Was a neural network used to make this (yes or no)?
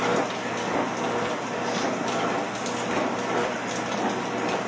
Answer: no